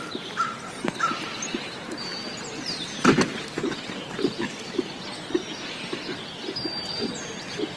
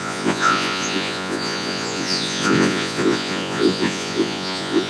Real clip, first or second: first